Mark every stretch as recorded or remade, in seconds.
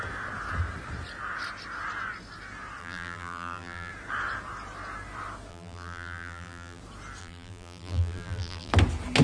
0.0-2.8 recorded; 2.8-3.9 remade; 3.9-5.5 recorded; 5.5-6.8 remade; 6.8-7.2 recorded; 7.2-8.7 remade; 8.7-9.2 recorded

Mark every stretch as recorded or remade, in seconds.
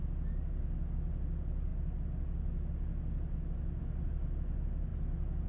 0.0-5.5 recorded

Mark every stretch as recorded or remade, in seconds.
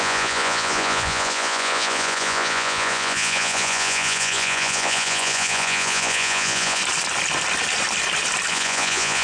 0.0-6.8 remade; 6.8-8.5 recorded; 8.5-9.2 remade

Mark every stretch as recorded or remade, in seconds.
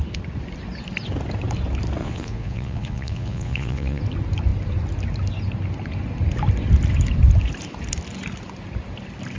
0.0-2.0 recorded; 2.0-4.0 remade; 4.0-9.4 recorded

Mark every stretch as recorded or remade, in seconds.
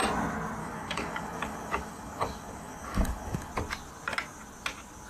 0.0-0.6 recorded; 0.6-3.5 remade; 3.5-5.1 recorded